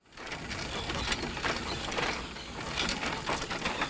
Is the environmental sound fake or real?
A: real